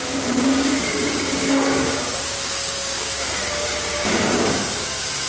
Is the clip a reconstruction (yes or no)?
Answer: yes